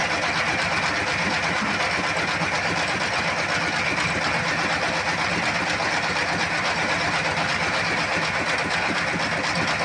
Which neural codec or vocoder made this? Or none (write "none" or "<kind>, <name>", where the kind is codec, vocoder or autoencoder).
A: none